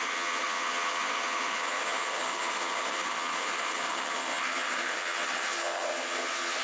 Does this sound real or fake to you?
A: fake